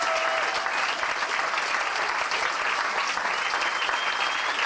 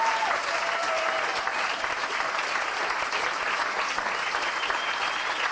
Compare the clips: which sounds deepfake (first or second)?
second